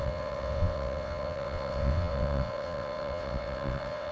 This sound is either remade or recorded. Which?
remade